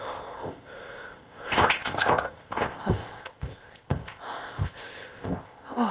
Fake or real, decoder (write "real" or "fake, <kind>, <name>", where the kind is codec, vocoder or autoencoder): fake, codec, ZipCodec